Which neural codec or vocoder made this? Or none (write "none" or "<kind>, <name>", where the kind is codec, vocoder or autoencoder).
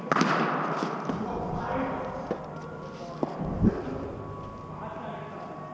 none